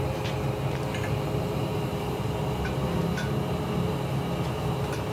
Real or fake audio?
real